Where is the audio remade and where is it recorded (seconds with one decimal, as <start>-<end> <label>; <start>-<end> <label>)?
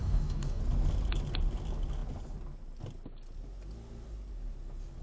0.0-0.6 remade; 0.6-5.0 recorded